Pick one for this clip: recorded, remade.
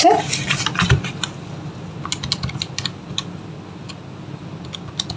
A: recorded